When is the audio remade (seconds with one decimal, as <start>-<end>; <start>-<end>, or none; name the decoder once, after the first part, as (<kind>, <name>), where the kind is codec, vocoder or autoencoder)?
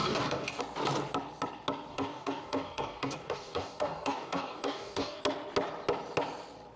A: 0.0-0.6 (codec, DAC); 1.9-5.2